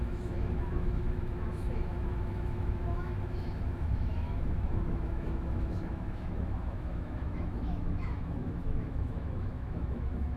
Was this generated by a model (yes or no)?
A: yes